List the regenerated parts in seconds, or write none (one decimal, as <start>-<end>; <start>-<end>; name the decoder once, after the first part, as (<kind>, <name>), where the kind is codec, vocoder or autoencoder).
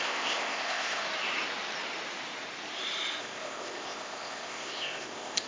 0.0-1.0 (codec, ZipCodec); 3.2-5.5